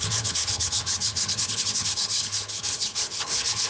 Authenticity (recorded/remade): remade